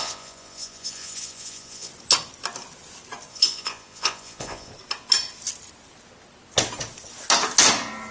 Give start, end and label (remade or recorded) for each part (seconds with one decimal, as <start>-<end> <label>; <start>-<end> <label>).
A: 0.0-1.9 remade; 1.9-3.3 recorded; 3.3-4.7 remade; 4.7-8.1 recorded